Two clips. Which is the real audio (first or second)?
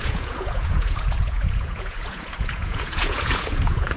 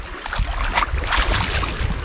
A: second